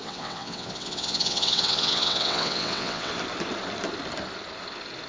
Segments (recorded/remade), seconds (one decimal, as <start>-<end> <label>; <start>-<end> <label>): 0.0-3.1 remade; 3.1-5.1 recorded